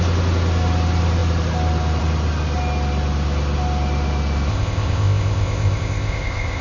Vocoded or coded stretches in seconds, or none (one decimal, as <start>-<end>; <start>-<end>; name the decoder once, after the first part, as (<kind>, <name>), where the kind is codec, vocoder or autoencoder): 4.5-6.6 (codec, ZipCodec)